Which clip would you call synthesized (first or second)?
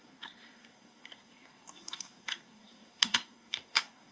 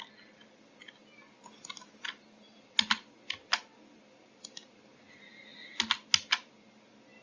first